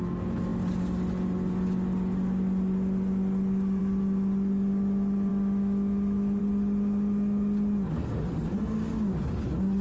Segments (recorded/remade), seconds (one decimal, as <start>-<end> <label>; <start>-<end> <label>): 0.0-5.3 recorded; 5.3-6.4 remade; 6.4-9.8 recorded